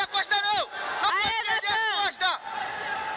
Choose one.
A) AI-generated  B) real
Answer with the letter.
B